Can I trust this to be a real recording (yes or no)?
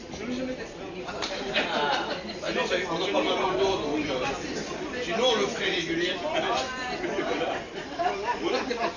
yes